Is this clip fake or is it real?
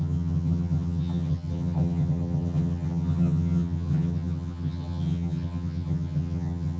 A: fake